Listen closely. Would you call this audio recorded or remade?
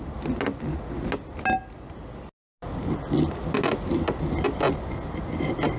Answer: recorded